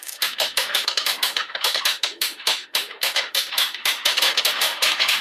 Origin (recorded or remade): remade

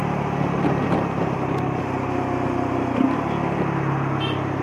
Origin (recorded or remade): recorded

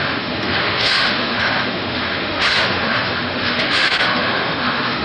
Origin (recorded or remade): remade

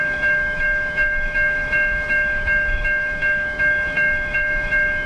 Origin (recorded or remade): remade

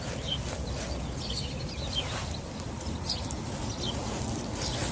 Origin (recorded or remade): recorded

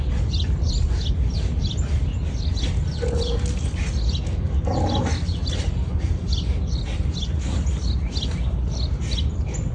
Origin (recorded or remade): recorded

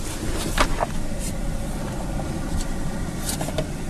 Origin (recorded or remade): recorded